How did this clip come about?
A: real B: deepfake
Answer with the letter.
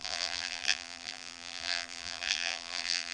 B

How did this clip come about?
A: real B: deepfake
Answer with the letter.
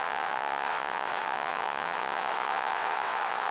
B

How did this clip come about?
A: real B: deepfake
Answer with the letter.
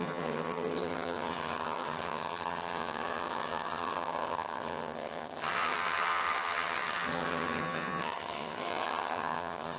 B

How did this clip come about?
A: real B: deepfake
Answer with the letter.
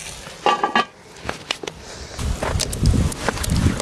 A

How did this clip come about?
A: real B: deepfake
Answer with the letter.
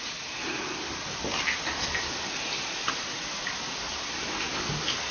A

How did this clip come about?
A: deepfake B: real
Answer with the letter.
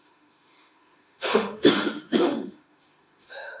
A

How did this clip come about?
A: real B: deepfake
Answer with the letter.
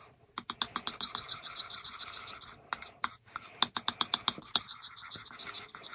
A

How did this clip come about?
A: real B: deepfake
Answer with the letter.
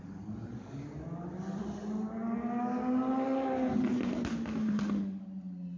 A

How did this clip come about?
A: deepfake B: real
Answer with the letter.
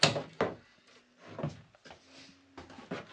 B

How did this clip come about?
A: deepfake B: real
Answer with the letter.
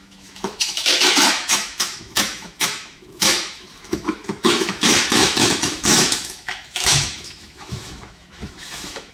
A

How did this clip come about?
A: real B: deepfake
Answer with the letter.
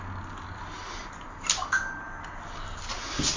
A